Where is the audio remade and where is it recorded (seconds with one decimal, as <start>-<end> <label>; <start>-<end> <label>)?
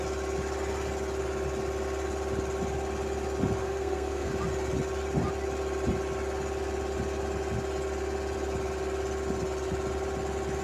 0.0-3.6 recorded; 3.6-4.3 remade; 4.3-10.6 recorded